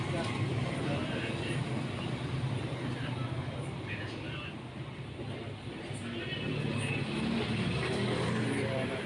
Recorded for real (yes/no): yes